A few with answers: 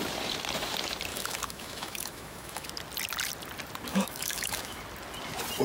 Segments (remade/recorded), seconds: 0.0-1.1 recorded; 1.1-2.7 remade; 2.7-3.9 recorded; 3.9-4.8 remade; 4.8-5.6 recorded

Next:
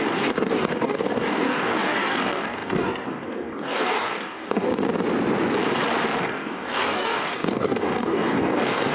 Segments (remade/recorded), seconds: 0.0-4.7 remade; 4.7-6.2 recorded; 6.2-8.9 remade

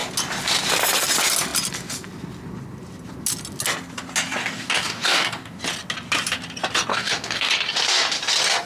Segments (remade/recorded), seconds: 0.0-4.4 recorded; 4.4-5.6 remade; 5.6-6.9 recorded; 6.9-7.5 remade; 7.5-8.7 recorded

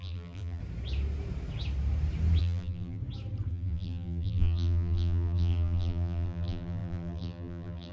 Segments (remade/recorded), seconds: 0.0-0.6 remade; 0.6-2.4 recorded; 2.4-3.0 remade; 3.0-3.5 recorded; 3.5-7.9 remade